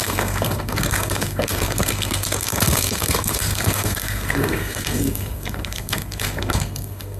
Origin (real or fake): fake